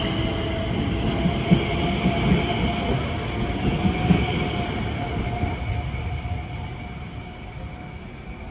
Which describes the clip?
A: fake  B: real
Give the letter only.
B